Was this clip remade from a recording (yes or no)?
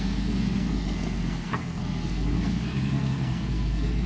yes